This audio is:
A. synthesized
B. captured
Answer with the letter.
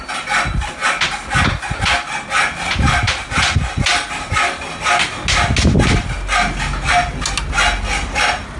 B